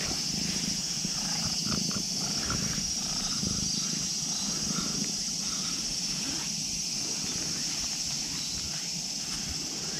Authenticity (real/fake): real